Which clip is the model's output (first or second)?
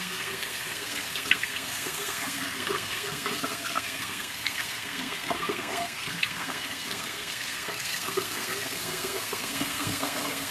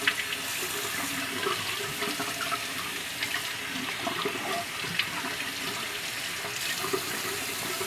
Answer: first